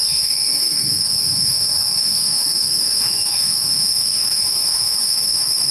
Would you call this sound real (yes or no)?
no